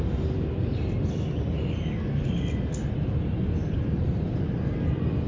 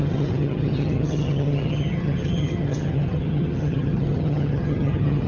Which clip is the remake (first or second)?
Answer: second